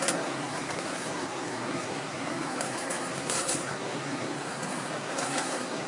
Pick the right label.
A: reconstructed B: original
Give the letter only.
A